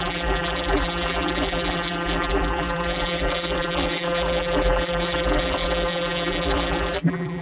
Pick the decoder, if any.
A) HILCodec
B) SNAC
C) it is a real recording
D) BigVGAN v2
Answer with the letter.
D